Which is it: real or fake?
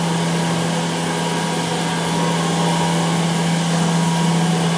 real